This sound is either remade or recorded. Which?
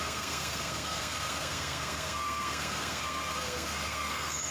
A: remade